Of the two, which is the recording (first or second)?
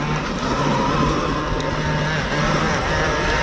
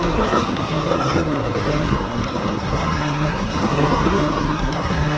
first